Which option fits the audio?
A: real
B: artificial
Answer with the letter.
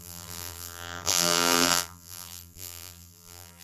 B